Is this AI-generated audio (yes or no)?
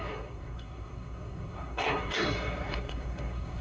yes